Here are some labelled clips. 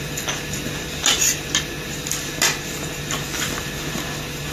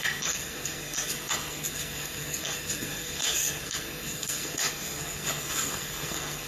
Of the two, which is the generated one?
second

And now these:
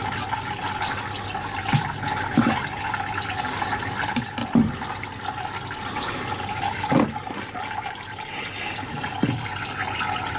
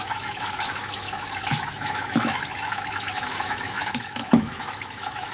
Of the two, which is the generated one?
second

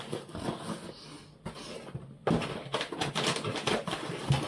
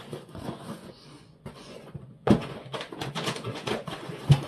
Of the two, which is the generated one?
second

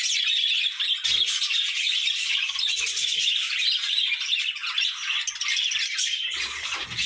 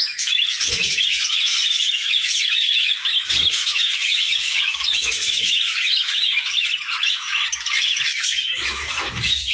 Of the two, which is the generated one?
second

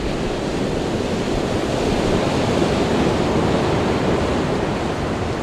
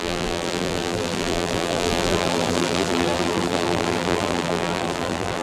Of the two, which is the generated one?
second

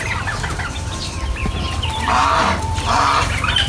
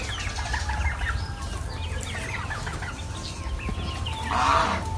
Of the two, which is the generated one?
first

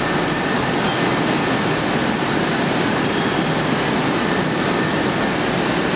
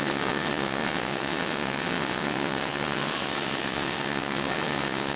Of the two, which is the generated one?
second